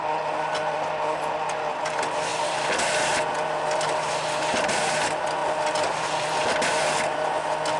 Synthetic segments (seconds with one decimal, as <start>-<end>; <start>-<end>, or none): 2.3-3.3; 5.4-6.4